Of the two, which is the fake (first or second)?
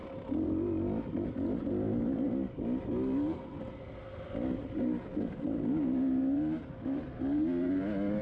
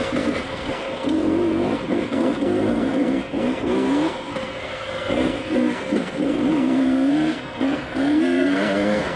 second